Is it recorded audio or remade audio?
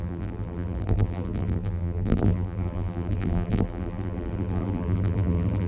remade